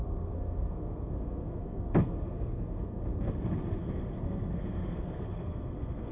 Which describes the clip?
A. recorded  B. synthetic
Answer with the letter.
B